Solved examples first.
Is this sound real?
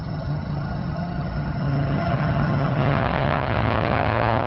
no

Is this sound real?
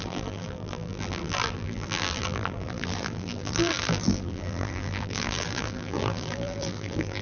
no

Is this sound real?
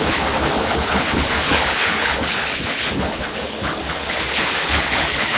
no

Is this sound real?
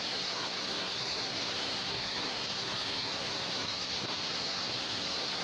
no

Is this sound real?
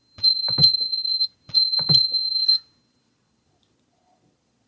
no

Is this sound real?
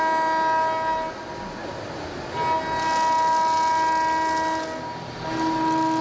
yes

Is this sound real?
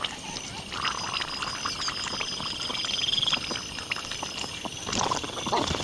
yes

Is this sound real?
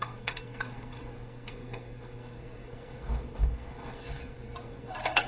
no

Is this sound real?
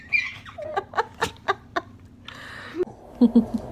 yes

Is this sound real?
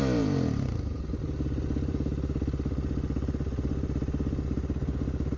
yes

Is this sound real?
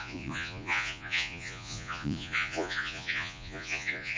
no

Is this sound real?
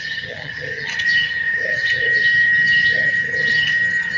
no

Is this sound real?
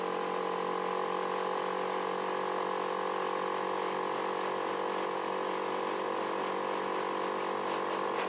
yes